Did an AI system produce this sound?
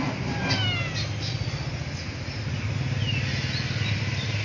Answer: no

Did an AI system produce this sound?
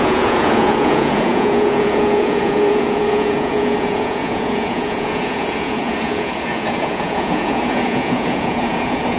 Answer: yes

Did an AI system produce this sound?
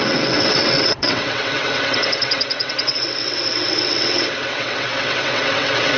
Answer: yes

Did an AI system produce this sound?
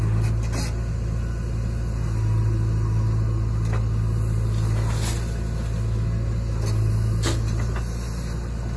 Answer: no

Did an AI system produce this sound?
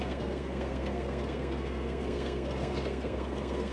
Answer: yes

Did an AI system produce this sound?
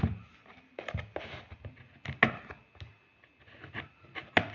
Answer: no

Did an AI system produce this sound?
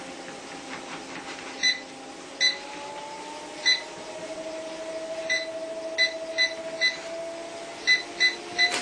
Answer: no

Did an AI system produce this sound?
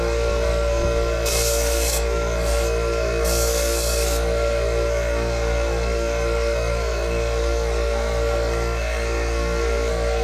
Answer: yes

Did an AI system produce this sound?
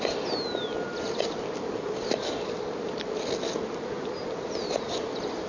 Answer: no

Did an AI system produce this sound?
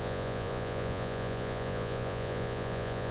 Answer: yes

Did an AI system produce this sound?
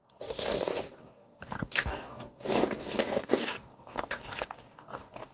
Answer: yes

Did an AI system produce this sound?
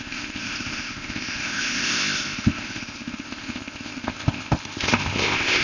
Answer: yes